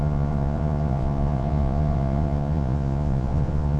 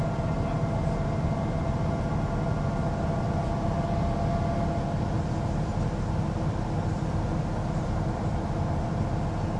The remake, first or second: first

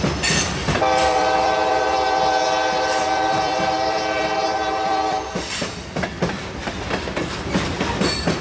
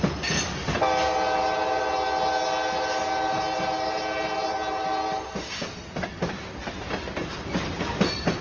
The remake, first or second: first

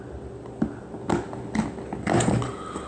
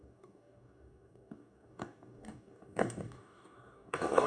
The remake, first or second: second